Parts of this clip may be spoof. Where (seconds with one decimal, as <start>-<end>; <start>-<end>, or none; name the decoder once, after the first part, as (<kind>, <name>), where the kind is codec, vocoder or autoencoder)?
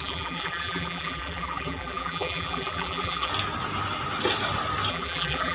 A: 0.0-3.3 (vocoder, BigVGAN v2); 4.9-5.5